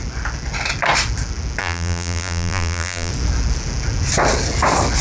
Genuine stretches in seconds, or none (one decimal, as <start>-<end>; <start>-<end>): 0.0-1.6; 3.1-5.0